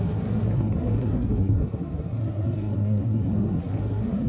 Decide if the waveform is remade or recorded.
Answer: remade